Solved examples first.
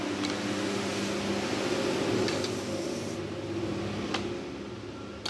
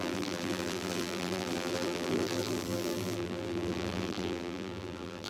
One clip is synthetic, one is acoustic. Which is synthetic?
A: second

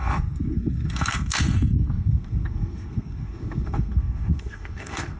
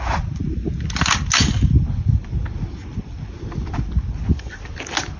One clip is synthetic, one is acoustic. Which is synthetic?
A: first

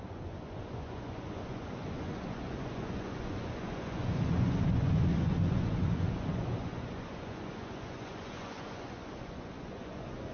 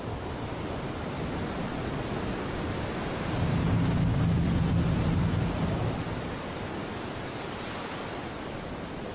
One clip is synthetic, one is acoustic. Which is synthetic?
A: first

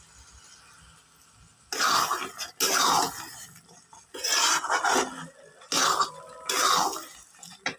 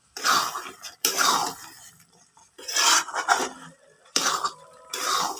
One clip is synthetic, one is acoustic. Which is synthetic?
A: second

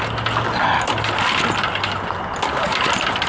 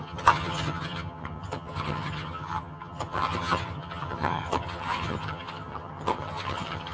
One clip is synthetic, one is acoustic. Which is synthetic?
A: second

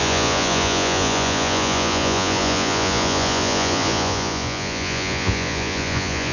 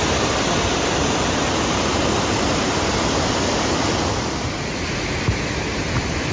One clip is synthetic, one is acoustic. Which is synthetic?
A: first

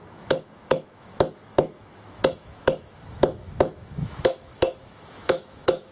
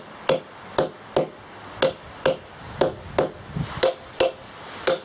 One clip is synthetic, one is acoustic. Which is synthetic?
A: first